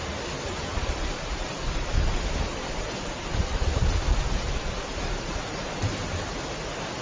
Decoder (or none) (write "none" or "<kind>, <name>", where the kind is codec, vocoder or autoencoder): none